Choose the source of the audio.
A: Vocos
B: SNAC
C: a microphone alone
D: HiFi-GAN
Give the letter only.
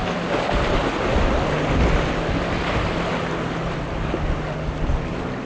C